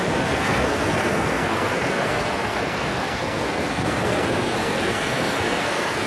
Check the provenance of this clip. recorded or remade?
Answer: remade